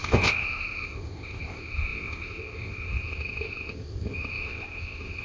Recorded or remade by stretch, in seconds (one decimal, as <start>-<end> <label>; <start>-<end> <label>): 0.0-5.2 remade